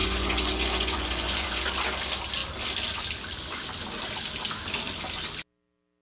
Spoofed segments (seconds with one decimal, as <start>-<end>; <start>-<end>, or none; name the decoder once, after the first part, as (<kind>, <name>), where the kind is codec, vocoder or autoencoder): 0.0-1.6 (vocoder, Vocos)